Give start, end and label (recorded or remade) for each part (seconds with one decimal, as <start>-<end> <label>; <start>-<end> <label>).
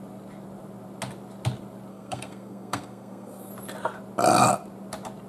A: 0.0-1.9 recorded; 1.9-3.5 remade; 3.5-5.3 recorded